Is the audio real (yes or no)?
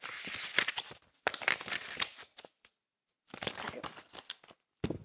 yes